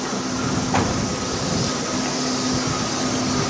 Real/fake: real